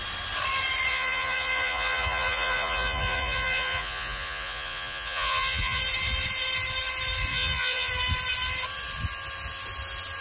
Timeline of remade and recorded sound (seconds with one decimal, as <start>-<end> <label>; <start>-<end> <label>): 0.0-0.9 recorded; 0.9-5.8 remade; 5.8-7.3 recorded; 7.3-7.9 remade; 7.9-10.2 recorded